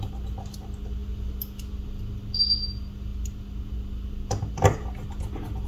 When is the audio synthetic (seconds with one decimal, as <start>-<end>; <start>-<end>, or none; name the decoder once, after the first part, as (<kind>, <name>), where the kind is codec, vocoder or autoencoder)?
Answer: none